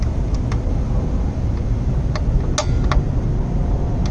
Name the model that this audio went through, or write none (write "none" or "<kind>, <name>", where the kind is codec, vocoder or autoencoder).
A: none